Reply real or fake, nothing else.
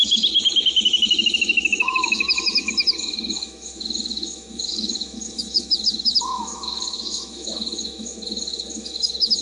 fake